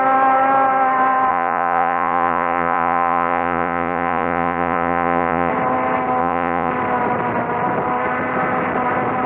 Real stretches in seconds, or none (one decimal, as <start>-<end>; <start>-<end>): 0.0-1.3; 5.5-6.2; 6.7-9.3